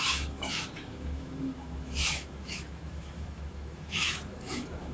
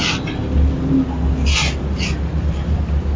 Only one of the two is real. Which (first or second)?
second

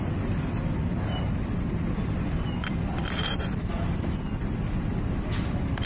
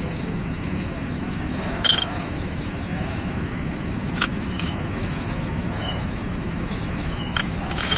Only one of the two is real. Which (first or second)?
first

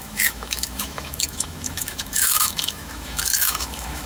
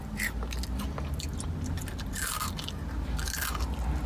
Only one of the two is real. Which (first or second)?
second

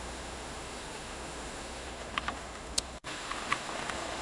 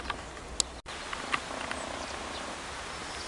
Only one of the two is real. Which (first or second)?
second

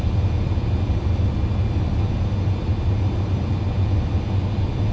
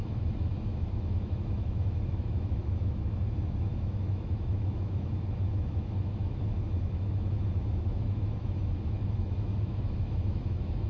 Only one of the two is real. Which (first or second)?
first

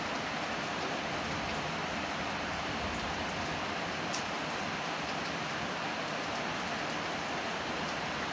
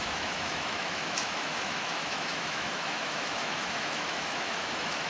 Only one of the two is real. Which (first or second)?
first